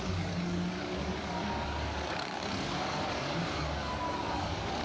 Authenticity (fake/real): fake